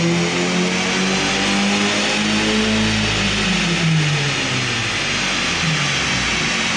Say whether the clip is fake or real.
real